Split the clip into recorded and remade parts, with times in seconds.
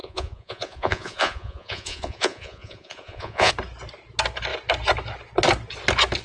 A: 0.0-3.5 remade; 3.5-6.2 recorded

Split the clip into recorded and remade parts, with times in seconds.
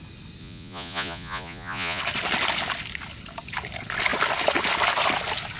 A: 0.0-0.4 recorded; 0.4-2.0 remade; 2.0-5.6 recorded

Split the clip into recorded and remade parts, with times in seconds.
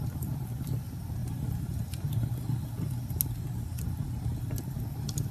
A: 0.0-1.2 remade; 1.2-4.4 recorded; 4.4-5.3 remade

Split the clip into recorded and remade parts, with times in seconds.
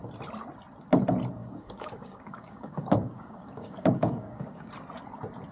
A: 0.0-1.4 recorded; 1.4-4.7 remade; 4.7-5.5 recorded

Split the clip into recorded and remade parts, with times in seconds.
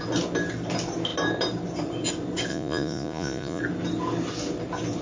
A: 0.0-2.5 recorded; 2.5-3.6 remade; 3.6-5.0 recorded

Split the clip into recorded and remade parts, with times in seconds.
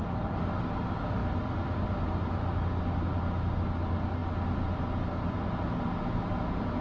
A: 0.0-6.8 recorded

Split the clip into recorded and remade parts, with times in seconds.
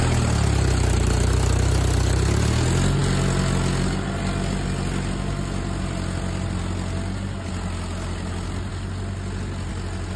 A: 0.0-10.2 recorded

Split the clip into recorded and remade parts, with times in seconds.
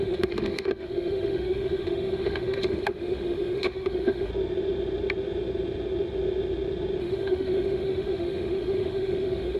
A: 0.0-4.3 remade; 4.3-7.0 recorded; 7.0-9.6 remade